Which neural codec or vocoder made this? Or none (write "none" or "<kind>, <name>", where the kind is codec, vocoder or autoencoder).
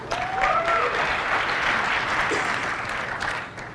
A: none